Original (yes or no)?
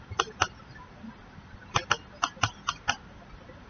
yes